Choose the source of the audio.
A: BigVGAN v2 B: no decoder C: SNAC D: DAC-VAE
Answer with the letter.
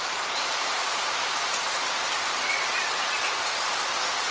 B